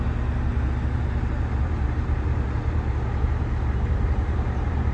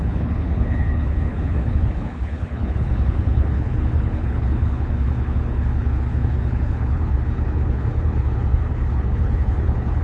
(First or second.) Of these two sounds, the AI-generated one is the second